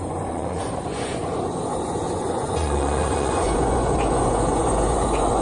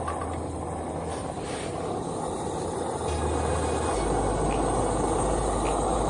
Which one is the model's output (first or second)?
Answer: first